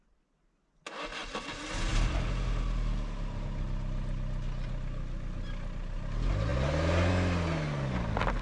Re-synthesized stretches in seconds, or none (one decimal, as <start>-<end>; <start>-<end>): 1.9-2.6